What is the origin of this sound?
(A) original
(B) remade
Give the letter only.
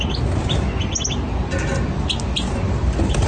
A